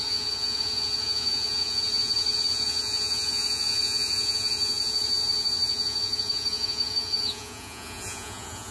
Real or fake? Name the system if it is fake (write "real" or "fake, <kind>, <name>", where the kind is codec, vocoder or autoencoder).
fake, vocoder, Vocos